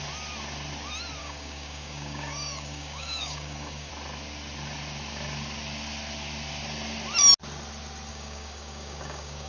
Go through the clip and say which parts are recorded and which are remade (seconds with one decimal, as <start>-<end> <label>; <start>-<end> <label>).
0.0-1.2 recorded; 1.2-3.9 remade; 3.9-8.1 recorded; 8.1-9.5 remade